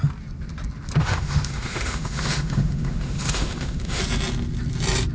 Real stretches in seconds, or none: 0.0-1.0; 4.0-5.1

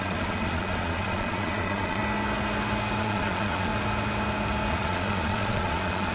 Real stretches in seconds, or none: 2.0-3.0; 3.7-4.7

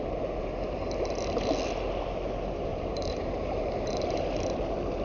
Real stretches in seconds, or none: 0.0-2.7; 4.0-5.0

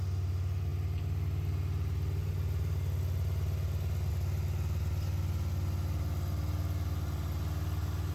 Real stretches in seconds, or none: 0.0-8.1